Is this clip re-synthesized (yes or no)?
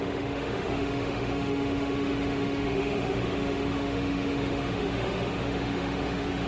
yes